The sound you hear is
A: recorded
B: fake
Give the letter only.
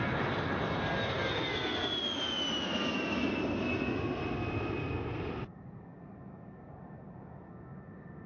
A